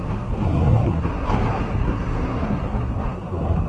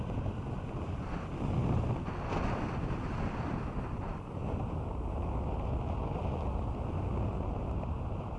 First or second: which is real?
second